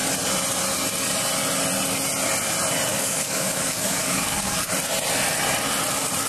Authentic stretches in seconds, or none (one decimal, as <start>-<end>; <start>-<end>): 0.0-2.9; 4.7-6.3